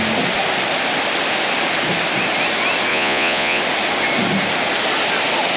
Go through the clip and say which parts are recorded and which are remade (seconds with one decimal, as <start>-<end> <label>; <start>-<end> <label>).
0.0-2.9 recorded; 2.9-3.6 remade; 3.6-5.6 recorded